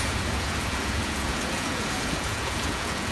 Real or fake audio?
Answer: fake